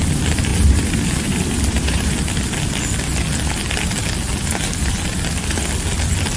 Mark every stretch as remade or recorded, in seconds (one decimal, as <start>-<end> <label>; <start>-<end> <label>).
0.0-0.5 recorded; 0.5-2.1 remade; 2.1-6.4 recorded